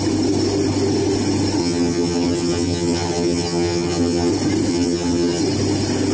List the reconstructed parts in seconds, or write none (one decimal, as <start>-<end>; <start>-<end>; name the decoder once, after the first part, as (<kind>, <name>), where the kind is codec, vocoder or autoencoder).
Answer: 1.6-4.3 (vocoder, HiFi-GAN); 4.7-5.4